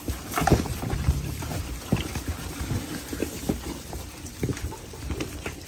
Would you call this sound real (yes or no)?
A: yes